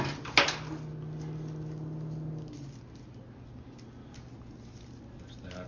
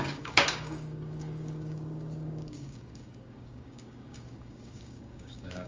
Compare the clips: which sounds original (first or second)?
first